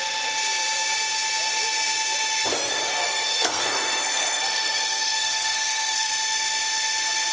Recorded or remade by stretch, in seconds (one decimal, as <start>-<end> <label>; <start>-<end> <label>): 0.0-3.0 recorded; 3.0-6.1 remade; 6.1-7.3 recorded